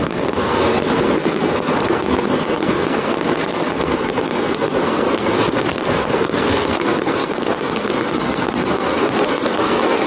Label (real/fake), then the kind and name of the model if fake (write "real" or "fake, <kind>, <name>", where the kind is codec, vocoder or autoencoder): fake, codec, SNAC